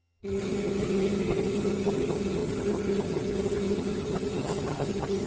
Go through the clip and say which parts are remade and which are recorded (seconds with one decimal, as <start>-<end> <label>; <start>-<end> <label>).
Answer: 0.0-5.3 remade